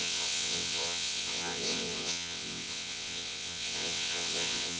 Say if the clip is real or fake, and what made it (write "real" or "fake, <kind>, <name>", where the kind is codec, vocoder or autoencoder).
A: fake, vocoder, WaveNeXt